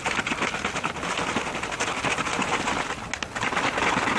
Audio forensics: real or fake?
real